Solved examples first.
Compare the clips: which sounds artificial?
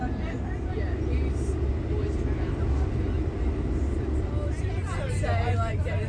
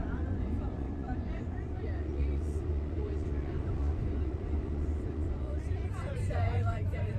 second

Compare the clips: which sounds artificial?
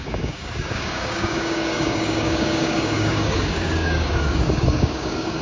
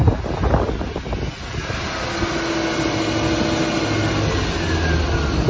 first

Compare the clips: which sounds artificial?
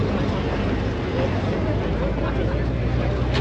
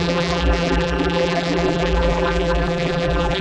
second